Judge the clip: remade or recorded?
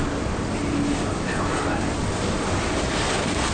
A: recorded